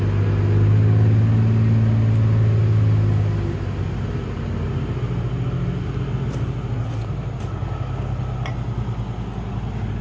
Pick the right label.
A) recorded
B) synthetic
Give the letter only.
A